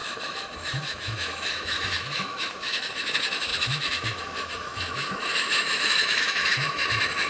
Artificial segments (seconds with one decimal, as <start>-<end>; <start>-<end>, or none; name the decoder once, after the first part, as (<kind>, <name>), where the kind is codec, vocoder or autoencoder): 0.0-7.3 (autoencoder, DAC-VAE)